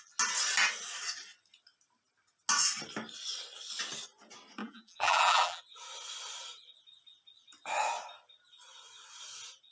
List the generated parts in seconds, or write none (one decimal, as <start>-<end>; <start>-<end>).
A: 4.6-5.6

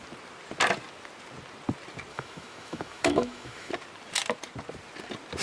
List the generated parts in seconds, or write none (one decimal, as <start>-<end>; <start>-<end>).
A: 2.1-3.7

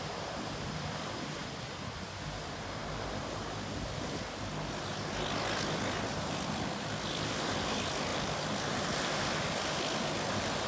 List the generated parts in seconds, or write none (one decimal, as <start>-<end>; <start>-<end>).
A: 0.0-1.4; 6.1-10.7